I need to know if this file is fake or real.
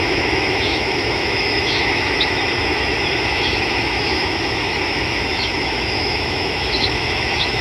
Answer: fake